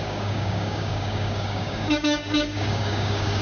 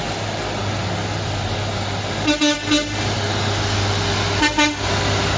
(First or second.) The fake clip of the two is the first